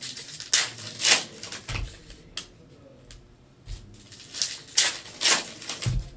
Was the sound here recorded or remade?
recorded